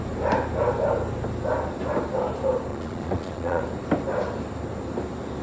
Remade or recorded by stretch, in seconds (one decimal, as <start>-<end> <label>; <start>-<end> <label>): 0.0-2.7 recorded; 2.7-3.6 remade; 3.6-5.4 recorded

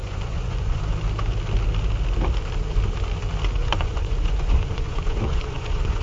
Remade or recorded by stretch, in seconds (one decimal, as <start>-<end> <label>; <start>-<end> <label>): 0.0-0.8 remade; 0.8-3.6 recorded; 3.6-6.0 remade

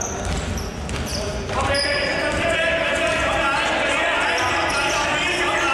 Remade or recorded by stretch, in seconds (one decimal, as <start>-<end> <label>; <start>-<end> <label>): 0.0-5.7 recorded